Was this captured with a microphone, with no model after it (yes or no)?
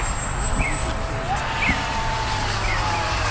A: yes